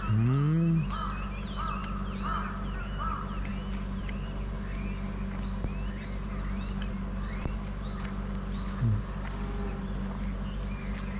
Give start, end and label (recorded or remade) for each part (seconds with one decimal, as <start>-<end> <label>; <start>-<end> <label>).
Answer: 0.0-11.2 recorded